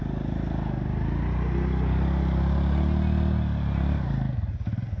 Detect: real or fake real